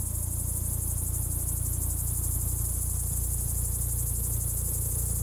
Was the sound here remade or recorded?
remade